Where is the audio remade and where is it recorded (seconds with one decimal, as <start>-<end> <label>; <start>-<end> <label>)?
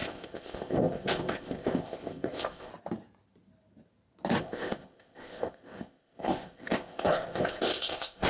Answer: 0.0-2.7 remade; 2.7-4.4 recorded; 4.4-8.3 remade